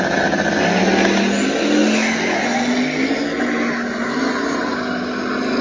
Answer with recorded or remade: recorded